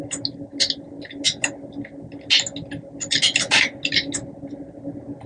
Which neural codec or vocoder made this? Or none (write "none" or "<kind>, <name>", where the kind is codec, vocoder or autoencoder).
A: none